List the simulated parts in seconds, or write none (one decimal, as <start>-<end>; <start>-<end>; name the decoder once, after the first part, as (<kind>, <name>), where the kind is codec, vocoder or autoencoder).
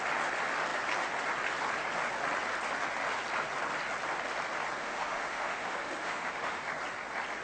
4.8-6.6 (autoencoder, DAC-VAE)